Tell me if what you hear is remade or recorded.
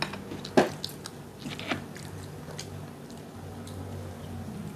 recorded